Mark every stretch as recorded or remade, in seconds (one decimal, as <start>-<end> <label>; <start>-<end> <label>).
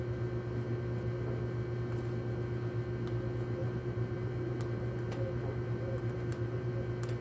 0.0-3.6 recorded; 3.6-6.7 remade; 6.7-7.2 recorded